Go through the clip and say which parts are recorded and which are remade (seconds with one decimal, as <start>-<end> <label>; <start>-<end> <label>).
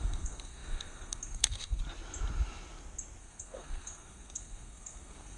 0.0-1.8 remade; 1.8-3.2 recorded; 3.2-5.4 remade